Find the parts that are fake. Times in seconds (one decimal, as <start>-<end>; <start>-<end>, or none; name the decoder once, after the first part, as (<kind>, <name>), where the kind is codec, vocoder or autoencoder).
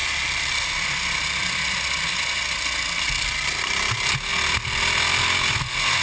0.0-0.8 (vocoder, BigVGAN v2); 1.4-2.3